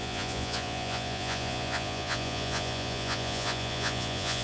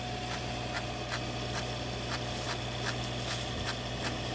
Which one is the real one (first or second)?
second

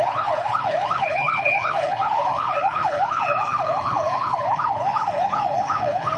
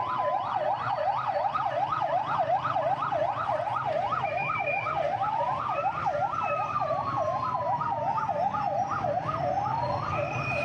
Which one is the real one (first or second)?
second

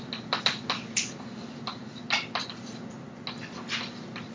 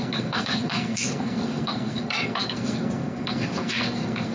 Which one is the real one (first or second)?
first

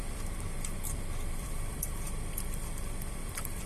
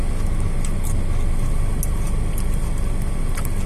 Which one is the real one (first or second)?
second